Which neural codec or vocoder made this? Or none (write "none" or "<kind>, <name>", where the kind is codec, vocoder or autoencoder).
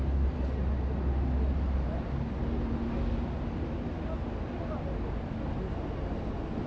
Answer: none